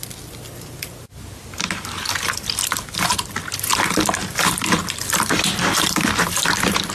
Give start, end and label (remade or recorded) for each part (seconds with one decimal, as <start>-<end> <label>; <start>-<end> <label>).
0.0-2.0 recorded; 2.0-3.7 remade; 3.7-4.3 recorded; 4.3-6.9 remade